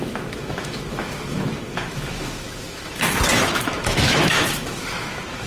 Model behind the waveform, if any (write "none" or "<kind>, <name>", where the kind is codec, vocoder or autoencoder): autoencoder, DAC-VAE